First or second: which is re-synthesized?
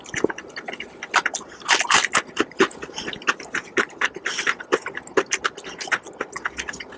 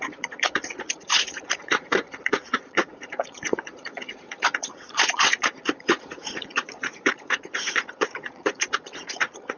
second